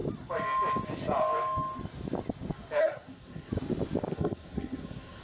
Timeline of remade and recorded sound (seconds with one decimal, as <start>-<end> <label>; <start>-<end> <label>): 0.0-2.8 recorded; 2.8-3.5 remade; 3.5-4.1 recorded; 4.1-5.2 remade